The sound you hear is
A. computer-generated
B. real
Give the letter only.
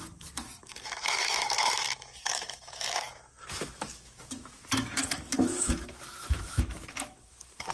A